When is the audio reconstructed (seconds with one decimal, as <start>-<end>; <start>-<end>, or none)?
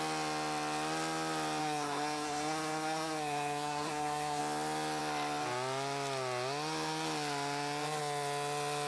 1.6-4.4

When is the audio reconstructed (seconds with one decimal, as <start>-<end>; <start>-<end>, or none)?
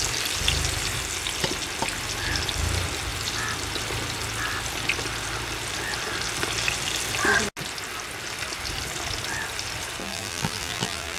10.0-11.2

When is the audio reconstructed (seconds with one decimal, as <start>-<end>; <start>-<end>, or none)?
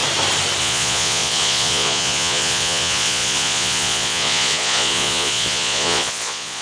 0.6-6.6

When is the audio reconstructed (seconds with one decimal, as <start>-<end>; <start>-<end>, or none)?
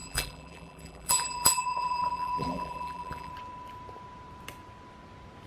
0.0-3.3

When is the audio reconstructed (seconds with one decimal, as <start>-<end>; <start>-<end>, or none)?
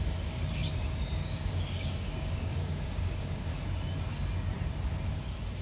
0.0-3.5; 5.1-5.6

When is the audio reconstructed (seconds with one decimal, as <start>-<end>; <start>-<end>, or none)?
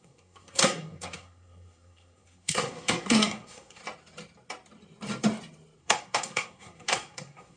0.0-3.8; 5.8-7.6